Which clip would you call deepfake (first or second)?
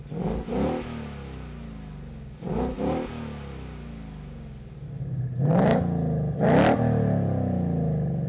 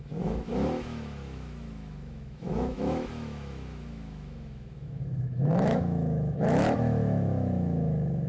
second